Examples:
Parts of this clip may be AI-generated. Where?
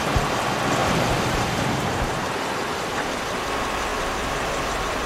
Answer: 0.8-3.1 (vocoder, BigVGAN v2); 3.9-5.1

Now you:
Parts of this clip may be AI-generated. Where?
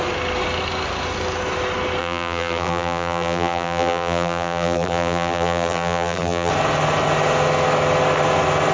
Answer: 2.0-6.5 (vocoder, BigVGAN v2)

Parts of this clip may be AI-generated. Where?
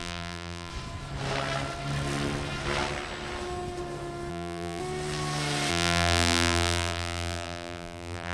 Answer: 0.0-0.7 (vocoder, BigVGAN v2); 4.3-4.8; 5.7-8.3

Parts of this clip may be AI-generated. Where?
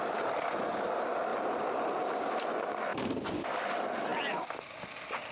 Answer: 1.3-1.9 (vocoder, BigVGAN v2); 2.9-3.5; 4.1-4.6